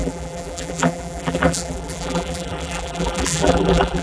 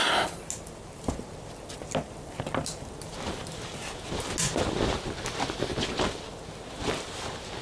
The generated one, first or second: first